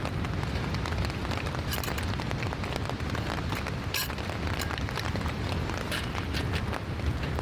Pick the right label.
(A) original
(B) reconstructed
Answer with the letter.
A